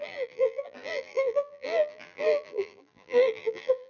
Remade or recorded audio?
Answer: remade